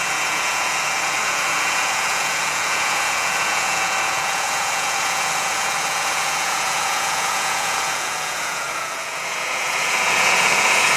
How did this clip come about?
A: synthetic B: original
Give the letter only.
A